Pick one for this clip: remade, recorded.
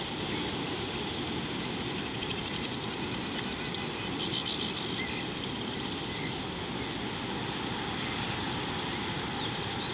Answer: recorded